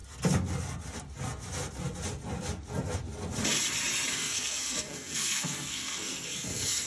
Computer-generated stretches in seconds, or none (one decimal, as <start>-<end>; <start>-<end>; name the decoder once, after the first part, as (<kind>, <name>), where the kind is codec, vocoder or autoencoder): 4.1-6.9 (codec, SNAC)